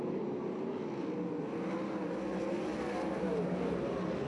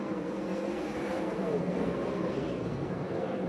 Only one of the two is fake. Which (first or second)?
second